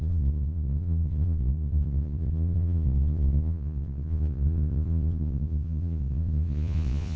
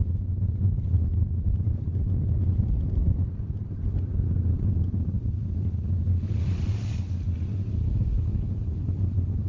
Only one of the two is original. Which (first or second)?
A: second